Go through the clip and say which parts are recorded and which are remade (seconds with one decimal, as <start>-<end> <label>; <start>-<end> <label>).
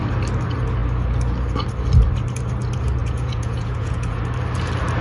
0.0-3.0 recorded; 3.0-4.2 remade; 4.2-5.0 recorded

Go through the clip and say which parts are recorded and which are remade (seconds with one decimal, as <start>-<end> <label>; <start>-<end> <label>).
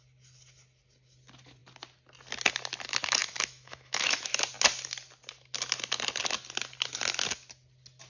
0.0-3.2 recorded; 3.2-4.3 remade; 4.3-8.1 recorded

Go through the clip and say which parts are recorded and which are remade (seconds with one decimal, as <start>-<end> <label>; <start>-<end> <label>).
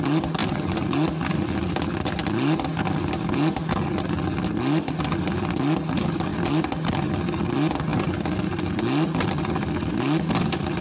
0.0-10.8 recorded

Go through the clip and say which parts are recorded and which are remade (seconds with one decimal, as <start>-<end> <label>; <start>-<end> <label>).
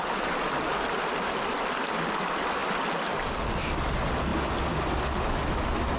0.0-6.0 recorded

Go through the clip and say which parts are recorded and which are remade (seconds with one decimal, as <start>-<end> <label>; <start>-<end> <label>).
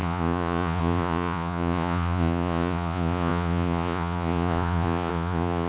0.0-5.7 remade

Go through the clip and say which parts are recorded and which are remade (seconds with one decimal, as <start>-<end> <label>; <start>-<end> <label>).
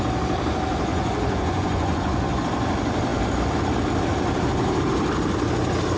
0.0-0.9 recorded; 0.9-2.4 remade; 2.4-6.0 recorded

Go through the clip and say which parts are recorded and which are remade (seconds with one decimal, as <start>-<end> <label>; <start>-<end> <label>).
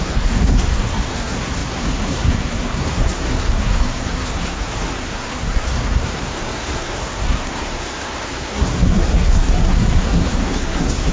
0.0-11.1 remade